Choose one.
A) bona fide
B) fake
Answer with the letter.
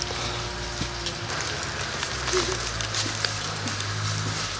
A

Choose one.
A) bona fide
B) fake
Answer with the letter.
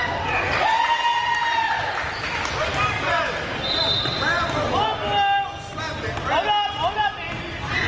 A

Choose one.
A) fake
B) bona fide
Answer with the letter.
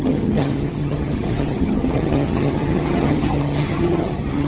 A